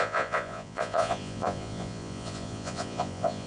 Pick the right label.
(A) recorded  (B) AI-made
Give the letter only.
B